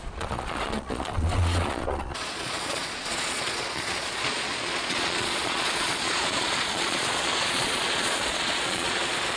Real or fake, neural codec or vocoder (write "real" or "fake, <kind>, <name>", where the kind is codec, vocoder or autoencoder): fake, vocoder, Vocos